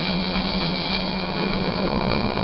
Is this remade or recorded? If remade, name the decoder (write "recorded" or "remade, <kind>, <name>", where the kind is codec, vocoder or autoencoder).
remade, vocoder, WaveNeXt